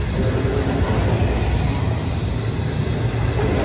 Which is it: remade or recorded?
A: recorded